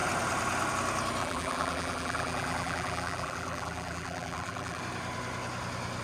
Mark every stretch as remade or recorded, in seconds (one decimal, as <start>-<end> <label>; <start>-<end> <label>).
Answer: 0.0-1.2 recorded; 1.2-4.8 remade; 4.8-6.0 recorded